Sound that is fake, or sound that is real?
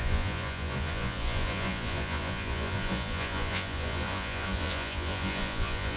fake